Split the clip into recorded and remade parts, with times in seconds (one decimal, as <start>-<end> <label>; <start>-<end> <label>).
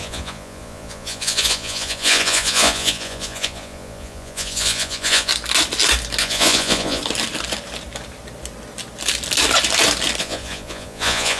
0.0-5.3 remade; 5.3-6.2 recorded; 6.2-7.0 remade; 7.0-10.2 recorded; 10.2-11.4 remade